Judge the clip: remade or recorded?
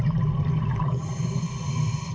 recorded